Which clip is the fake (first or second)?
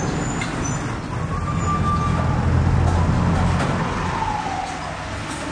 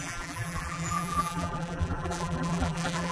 second